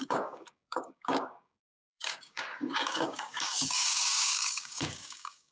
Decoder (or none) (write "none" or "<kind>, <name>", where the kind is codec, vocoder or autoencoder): codec, DAC